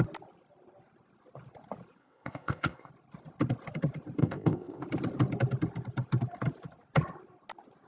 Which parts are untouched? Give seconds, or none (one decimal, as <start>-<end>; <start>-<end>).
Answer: 0.0-2.0; 2.9-4.2; 4.8-7.9